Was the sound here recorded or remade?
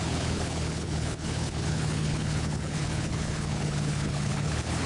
remade